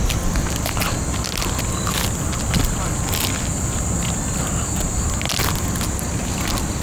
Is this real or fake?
real